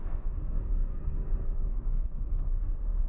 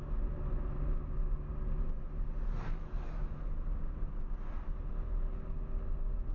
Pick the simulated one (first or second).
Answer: first